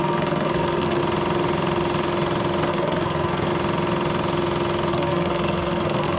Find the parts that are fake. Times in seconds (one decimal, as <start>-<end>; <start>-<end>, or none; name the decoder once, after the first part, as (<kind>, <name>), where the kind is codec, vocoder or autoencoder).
0.0-1.0 (codec, SNAC); 2.7-3.5; 4.9-6.2